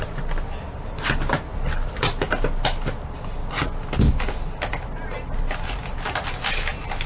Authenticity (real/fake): real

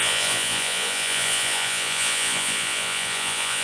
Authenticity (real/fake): fake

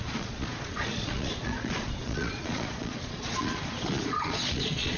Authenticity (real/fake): fake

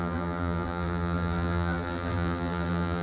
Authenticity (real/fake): fake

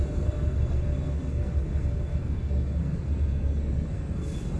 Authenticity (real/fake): fake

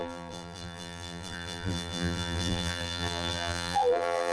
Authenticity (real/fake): fake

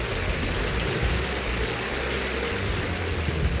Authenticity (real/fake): real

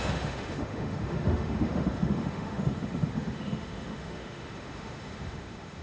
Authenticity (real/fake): fake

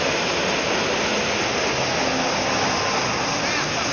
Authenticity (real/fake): real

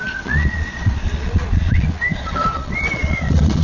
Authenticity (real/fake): fake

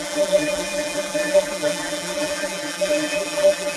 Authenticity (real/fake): fake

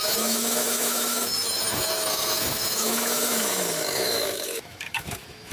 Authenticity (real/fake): fake